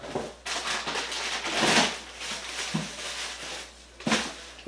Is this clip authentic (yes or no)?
yes